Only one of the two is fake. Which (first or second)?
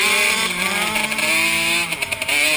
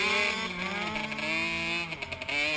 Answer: first